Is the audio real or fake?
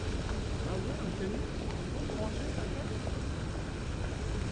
real